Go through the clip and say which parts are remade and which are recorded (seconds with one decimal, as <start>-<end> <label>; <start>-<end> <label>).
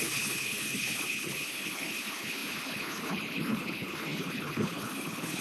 0.0-5.4 remade